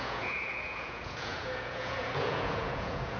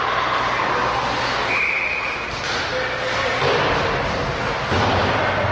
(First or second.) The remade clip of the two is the first